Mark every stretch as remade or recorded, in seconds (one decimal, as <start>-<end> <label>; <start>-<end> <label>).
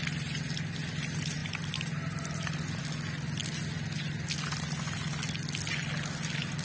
0.0-6.6 recorded